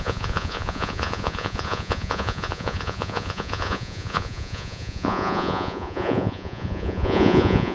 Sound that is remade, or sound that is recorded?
remade